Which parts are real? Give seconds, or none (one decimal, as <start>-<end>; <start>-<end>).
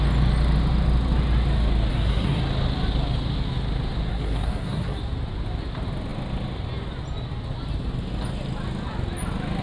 0.0-1.9; 2.4-4.1; 5.0-9.6